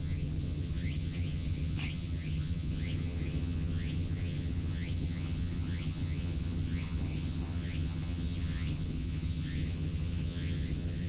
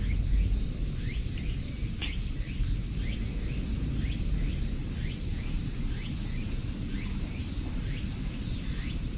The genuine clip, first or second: second